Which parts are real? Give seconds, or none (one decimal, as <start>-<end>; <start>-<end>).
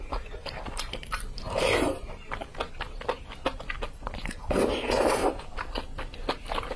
2.5-6.8